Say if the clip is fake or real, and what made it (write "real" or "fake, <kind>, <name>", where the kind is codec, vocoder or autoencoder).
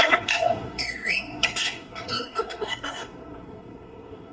fake, codec, SNAC